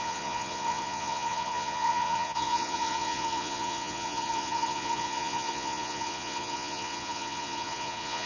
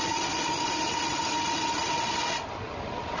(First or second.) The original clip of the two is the second